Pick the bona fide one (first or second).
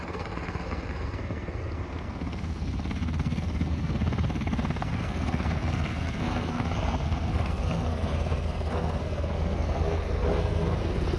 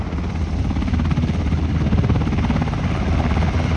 second